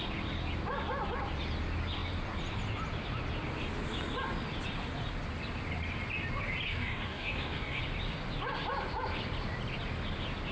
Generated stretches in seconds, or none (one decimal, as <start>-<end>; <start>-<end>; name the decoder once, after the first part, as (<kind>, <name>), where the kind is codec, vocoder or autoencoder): 6.7-7.8 (codec, DAC)